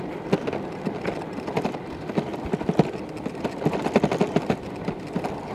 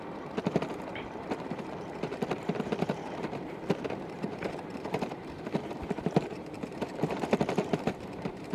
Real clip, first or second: first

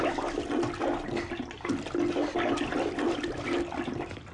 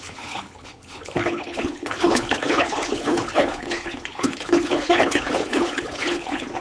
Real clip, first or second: first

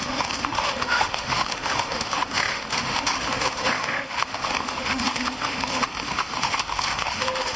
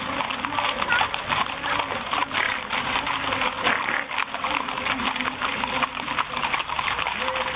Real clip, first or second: second